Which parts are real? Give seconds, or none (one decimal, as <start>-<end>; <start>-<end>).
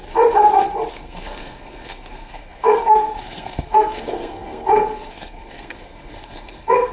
0.0-0.9